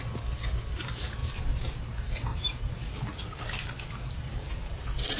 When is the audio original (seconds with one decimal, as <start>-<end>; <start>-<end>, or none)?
0.0-1.2; 1.8-2.3; 2.8-5.2